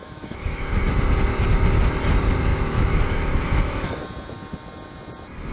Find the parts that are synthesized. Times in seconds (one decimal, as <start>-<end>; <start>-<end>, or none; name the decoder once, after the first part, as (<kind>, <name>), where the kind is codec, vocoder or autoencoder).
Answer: 0.0-0.8 (autoencoder, DAC-VAE); 2.5-4.0